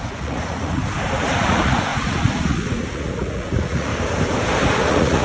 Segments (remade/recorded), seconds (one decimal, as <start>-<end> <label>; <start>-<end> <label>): 0.0-0.8 remade; 0.8-1.3 recorded; 1.3-3.9 remade; 3.9-4.7 recorded; 4.7-5.2 remade